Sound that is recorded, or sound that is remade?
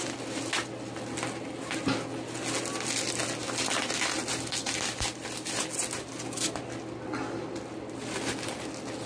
recorded